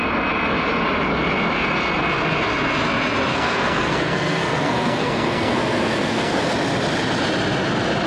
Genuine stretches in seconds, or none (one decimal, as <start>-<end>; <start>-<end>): 0.0-3.3; 6.4-8.1